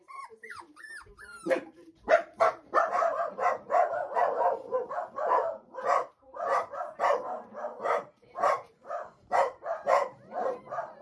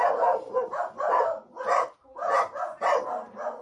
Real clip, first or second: second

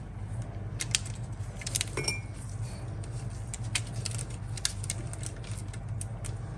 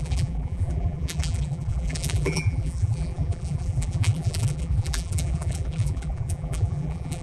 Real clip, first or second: first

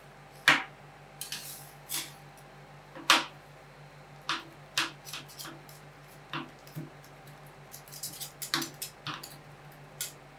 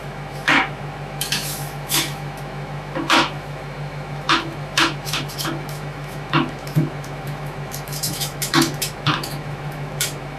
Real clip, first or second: first